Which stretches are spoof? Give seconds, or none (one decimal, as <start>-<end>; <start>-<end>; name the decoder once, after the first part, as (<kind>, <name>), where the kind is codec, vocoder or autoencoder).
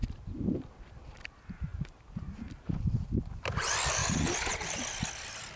0.0-0.7 (vocoder, BigVGAN v2); 1.7-2.4; 4.0-4.8